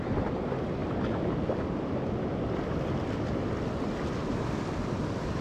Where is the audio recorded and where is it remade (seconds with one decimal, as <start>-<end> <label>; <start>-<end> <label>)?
0.0-4.3 recorded; 4.3-5.0 remade; 5.0-5.4 recorded